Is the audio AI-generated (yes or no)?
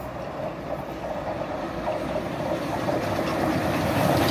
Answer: no